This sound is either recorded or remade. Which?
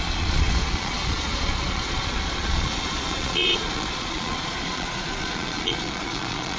remade